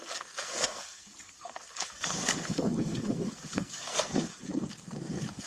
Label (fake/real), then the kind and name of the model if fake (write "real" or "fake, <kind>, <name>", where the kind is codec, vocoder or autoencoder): fake, codec, SNAC